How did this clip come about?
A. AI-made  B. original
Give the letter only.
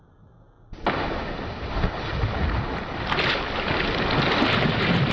B